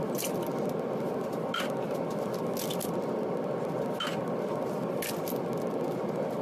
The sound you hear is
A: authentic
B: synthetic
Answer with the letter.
A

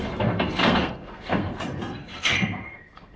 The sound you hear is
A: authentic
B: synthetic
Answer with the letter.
B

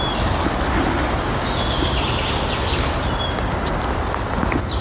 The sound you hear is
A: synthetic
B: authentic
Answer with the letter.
B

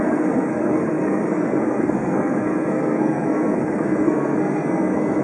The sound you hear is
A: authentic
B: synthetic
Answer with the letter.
B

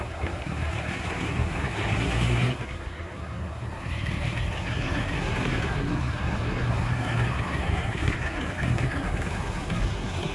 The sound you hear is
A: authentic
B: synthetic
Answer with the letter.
B